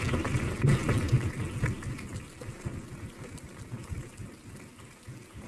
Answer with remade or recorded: recorded